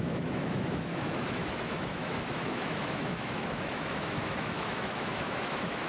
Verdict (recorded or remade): remade